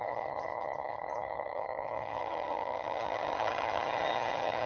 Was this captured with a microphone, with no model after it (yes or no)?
no